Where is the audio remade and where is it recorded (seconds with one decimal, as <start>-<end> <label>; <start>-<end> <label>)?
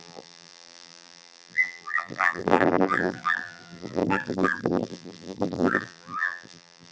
0.0-6.9 remade